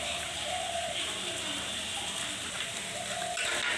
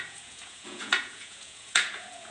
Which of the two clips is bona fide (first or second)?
first